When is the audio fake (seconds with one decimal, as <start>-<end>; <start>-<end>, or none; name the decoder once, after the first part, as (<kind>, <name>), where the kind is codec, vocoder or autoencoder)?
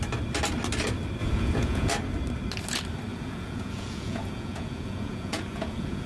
1.2-1.9 (vocoder, Vocos); 3.1-6.1